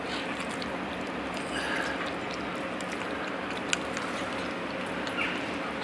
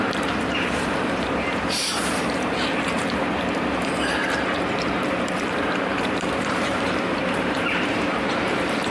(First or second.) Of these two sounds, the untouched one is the first